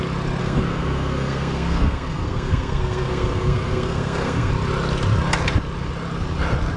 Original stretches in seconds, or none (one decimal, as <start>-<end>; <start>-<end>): 0.0-0.4; 4.5-6.8